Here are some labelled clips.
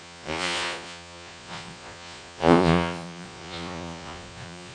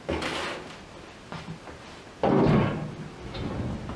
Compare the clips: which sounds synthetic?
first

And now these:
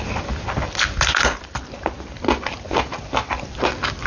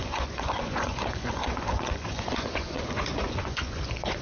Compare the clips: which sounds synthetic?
second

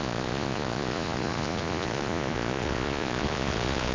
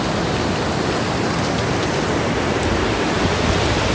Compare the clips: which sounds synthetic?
first